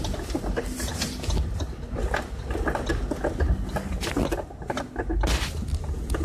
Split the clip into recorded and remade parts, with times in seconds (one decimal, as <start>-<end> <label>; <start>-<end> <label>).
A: 0.0-6.2 recorded